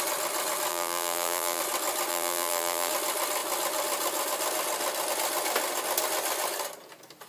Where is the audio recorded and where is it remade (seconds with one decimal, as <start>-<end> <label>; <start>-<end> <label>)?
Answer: 0.0-0.7 recorded; 0.7-1.6 remade; 1.6-2.1 recorded; 2.1-2.9 remade; 2.9-7.3 recorded